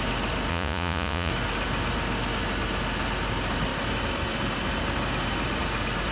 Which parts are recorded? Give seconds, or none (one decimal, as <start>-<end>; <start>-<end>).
0.0-0.5; 1.3-6.1